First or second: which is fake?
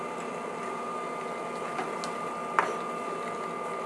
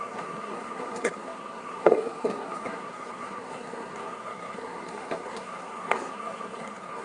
second